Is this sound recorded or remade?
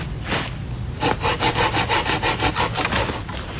recorded